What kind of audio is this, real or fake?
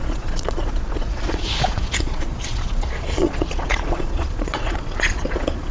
fake